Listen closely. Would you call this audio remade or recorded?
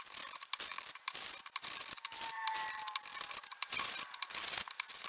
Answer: recorded